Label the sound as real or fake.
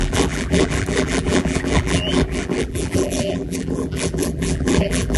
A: fake